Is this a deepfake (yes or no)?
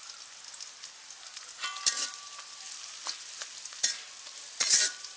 no